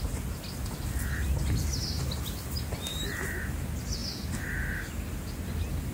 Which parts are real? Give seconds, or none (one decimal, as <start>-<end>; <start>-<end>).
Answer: 0.0-5.9